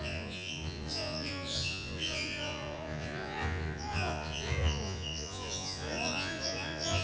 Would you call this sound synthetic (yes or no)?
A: yes